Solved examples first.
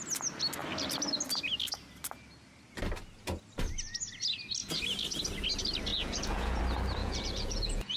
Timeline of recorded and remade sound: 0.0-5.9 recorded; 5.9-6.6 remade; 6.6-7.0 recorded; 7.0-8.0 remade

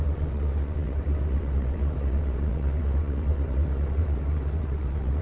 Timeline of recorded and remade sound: 0.0-5.2 remade

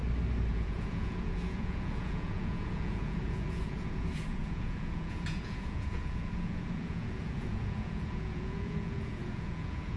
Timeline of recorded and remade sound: 0.0-0.5 recorded; 0.5-10.0 remade

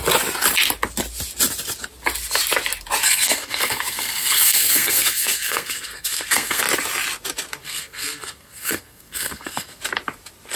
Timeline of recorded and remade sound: 0.0-3.0 recorded; 3.0-6.6 remade; 6.6-7.6 recorded; 7.6-9.8 remade; 9.8-10.6 recorded

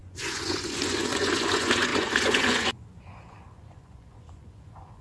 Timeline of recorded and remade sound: 0.0-5.0 remade

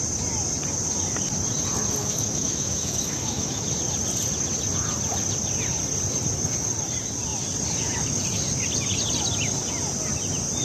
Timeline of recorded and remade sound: 0.0-2.0 recorded; 2.0-3.6 remade; 3.6-10.6 recorded

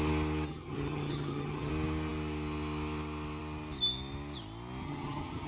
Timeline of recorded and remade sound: 0.0-0.5 recorded; 0.5-1.7 remade; 1.7-4.8 recorded; 4.8-5.5 remade